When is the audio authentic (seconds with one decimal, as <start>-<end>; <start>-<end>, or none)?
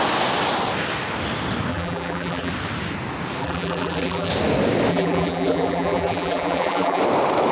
0.0-1.7; 2.5-3.4; 4.3-4.9; 7.0-7.5